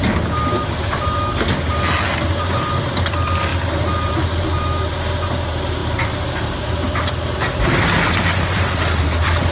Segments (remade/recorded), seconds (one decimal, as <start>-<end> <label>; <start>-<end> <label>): 0.0-9.5 recorded